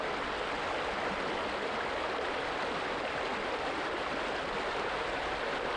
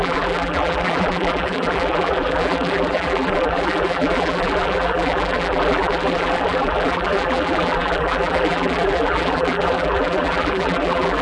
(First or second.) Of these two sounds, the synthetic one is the second